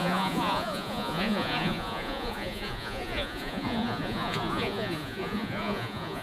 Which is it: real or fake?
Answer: fake